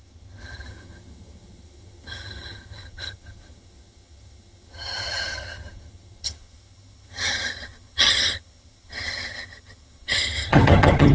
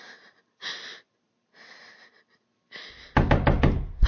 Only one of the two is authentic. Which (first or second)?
second